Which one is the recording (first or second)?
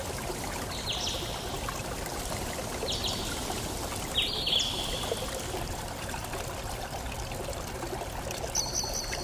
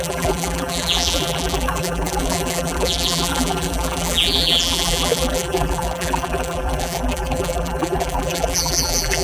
first